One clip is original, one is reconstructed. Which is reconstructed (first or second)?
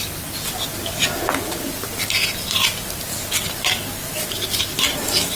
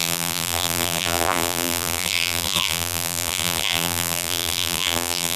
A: second